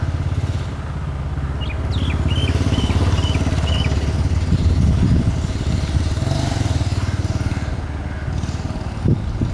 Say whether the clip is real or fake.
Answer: real